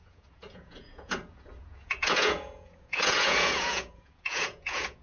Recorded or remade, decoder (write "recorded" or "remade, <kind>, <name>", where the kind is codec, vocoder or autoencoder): remade, vocoder, Vocos